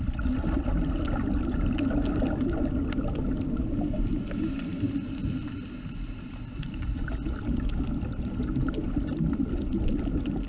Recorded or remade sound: recorded